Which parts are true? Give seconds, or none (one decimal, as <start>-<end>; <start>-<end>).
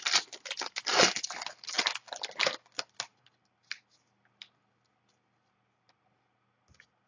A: 0.0-7.1